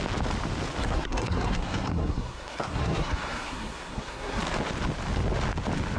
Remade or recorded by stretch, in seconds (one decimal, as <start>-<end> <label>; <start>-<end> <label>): 0.0-0.8 recorded; 0.8-4.4 remade; 4.4-6.0 recorded